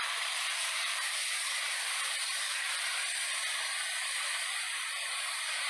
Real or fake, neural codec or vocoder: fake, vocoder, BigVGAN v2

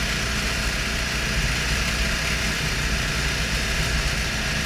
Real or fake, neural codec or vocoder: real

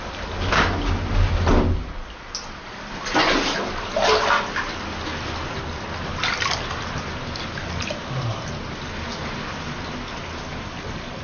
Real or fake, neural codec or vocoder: real